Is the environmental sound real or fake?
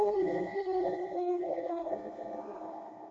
fake